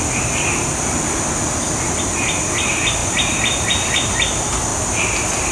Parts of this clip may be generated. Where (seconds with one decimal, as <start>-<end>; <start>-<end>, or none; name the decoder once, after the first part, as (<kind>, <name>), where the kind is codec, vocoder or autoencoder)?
3.0-4.1 (vocoder, BigVGAN v2)